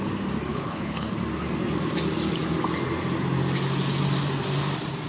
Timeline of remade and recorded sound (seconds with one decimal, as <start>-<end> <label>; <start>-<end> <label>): 0.0-0.5 recorded; 0.5-1.1 remade; 1.1-5.1 recorded